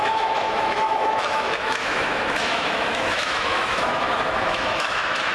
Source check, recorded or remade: remade